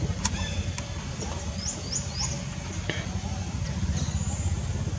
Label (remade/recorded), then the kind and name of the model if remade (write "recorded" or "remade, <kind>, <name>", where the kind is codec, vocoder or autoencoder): recorded